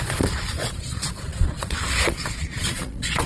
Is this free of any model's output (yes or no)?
no